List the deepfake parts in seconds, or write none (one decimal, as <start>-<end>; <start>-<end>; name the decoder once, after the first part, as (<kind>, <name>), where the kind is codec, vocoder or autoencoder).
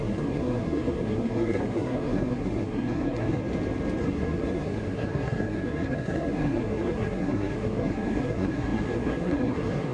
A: 0.0-3.4 (codec, SNAC); 4.0-9.9